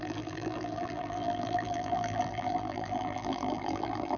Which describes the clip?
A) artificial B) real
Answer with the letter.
A